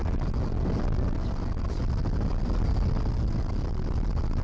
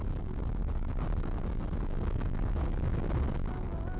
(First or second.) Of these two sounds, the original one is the first